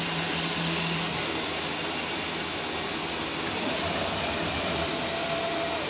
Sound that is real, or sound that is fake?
real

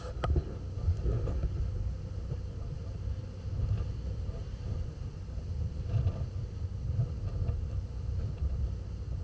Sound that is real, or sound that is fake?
real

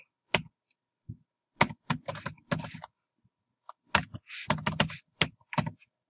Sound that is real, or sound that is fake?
real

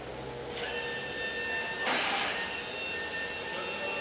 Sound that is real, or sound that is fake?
real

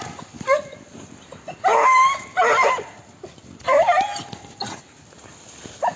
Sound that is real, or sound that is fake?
real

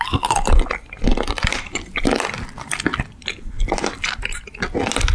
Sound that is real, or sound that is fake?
real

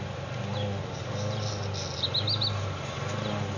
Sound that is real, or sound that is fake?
real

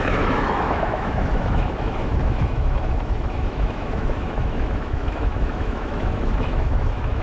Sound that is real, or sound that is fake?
fake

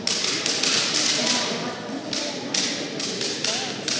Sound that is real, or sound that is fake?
real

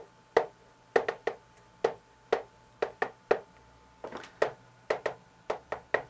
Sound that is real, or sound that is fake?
real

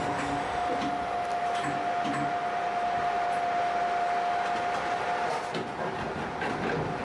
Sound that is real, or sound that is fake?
real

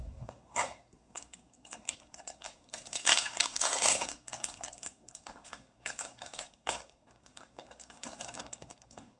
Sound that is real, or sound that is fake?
fake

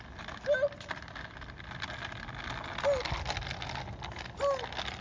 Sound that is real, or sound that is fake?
real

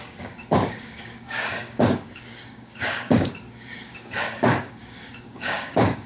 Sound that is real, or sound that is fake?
fake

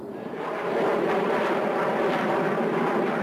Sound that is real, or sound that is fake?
fake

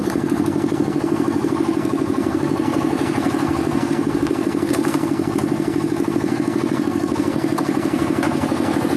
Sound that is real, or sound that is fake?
fake